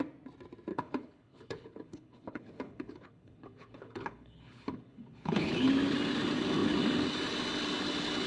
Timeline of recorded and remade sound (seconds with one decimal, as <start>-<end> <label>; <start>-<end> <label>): 0.0-0.7 recorded; 0.7-5.7 remade; 5.7-8.3 recorded